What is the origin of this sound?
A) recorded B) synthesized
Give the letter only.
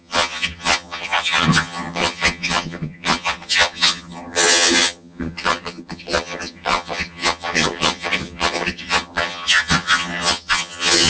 B